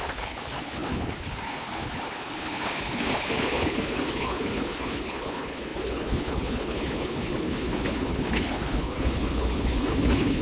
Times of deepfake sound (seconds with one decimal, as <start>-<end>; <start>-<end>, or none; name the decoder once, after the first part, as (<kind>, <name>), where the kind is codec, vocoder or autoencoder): 0.0-10.4 (codec, HILCodec)